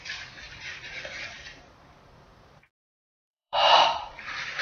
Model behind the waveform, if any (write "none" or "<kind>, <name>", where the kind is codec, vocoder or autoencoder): vocoder, BigVGAN v2